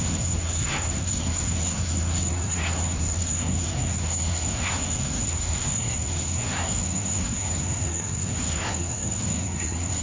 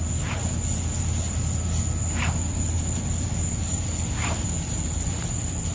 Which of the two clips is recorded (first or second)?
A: second